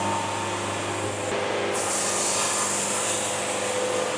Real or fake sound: real